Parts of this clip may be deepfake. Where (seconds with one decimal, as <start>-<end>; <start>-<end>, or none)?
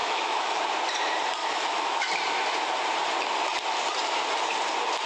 0.0-0.6; 1.4-2.1